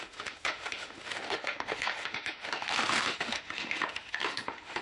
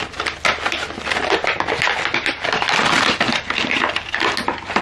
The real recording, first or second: second